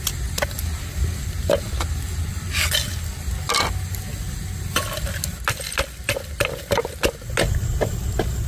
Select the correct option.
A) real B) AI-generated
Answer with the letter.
A